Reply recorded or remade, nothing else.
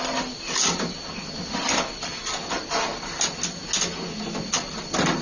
recorded